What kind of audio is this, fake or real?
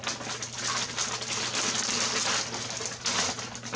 real